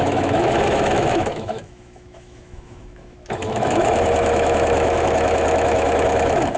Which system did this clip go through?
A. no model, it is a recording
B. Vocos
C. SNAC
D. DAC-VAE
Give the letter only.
D